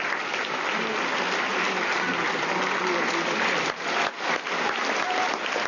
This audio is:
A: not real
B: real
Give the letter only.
B